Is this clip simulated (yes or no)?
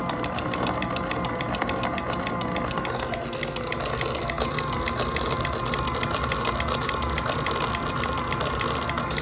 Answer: no